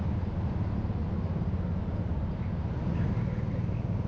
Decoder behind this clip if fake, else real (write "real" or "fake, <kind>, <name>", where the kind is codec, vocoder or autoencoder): real